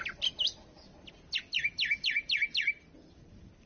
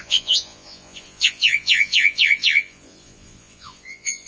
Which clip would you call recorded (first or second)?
first